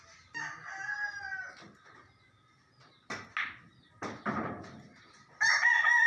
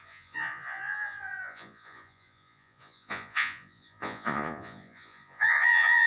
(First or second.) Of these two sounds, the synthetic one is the second